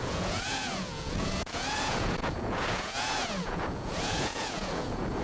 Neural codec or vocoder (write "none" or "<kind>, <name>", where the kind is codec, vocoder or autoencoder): vocoder, Vocos